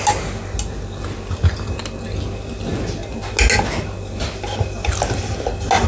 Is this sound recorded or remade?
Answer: recorded